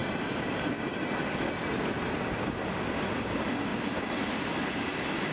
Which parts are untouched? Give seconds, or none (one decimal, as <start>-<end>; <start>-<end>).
0.0-5.3